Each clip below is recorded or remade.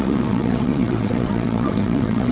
remade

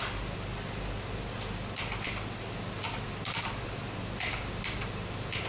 recorded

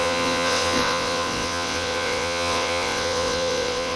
remade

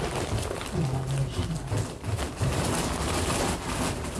recorded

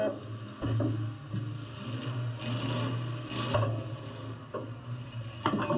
recorded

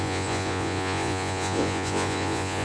remade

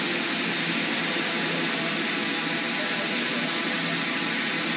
recorded